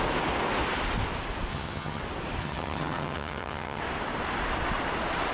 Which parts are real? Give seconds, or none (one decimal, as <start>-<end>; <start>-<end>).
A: 0.0-1.5; 2.0-2.4; 3.8-5.3